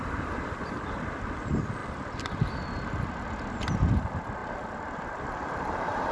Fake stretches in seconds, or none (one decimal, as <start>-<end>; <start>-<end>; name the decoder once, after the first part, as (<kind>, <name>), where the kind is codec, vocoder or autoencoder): 4.4-6.1 (vocoder, BigVGAN v2)

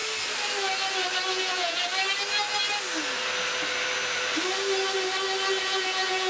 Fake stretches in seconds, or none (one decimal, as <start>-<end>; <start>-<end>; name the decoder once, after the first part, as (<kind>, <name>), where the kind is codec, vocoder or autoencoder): 1.3-1.8 (vocoder, Vocos); 5.6-6.3

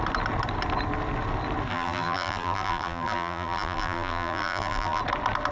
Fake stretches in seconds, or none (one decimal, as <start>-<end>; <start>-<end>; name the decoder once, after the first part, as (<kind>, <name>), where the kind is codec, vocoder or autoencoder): 1.7-5.0 (vocoder, BigVGAN v2)